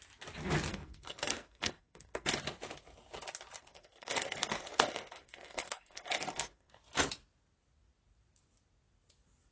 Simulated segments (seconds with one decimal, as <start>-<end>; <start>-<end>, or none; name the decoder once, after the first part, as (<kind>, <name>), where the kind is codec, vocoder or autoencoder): 0.7-2.3 (codec, SNAC); 3.6-6.8